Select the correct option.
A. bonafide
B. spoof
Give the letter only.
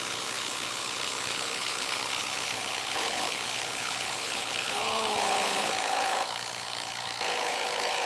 B